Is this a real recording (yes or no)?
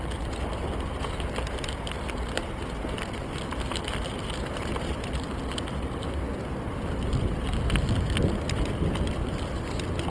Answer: yes